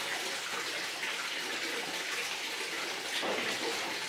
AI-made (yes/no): no